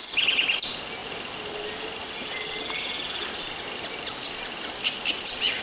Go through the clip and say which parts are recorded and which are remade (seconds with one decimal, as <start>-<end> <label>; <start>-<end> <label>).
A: 0.0-5.6 recorded